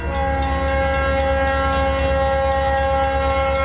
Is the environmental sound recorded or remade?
recorded